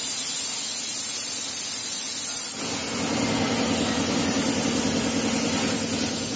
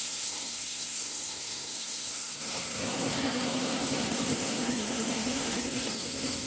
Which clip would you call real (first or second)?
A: first